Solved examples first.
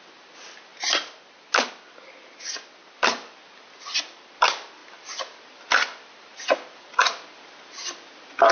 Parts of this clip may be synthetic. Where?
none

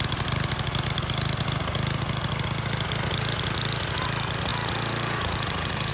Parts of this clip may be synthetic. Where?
none

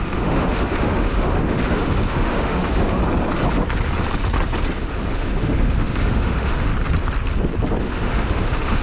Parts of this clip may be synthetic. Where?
0.0-3.0 (autoencoder, DAC-VAE); 4.8-6.7; 7.8-8.8

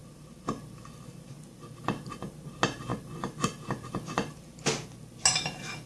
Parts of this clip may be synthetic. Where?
none